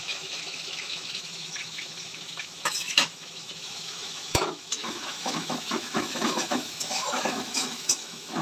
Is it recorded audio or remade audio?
remade